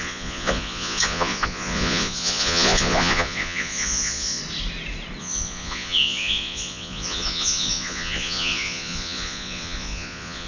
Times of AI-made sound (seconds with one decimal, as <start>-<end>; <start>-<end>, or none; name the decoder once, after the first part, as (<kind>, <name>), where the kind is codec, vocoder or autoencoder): 0.0-4.4 (vocoder, Vocos); 5.2-10.5